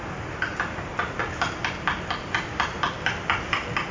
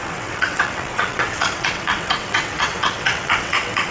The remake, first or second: second